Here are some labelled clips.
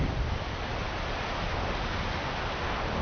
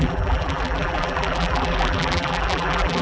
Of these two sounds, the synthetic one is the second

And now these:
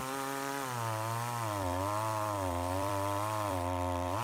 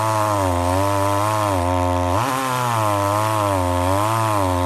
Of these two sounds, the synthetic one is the first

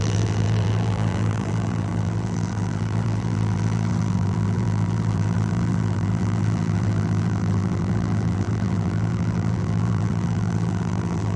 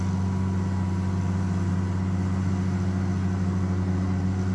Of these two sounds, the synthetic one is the first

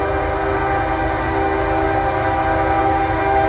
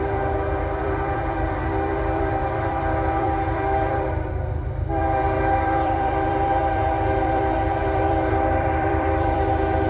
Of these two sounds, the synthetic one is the second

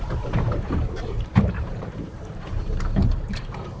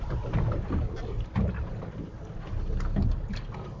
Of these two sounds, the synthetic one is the first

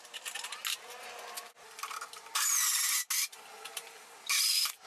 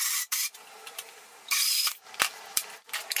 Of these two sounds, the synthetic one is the second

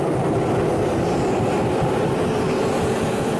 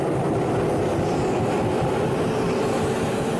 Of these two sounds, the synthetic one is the first